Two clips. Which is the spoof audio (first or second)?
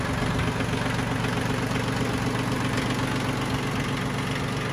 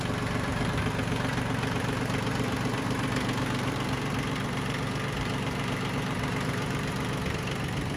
second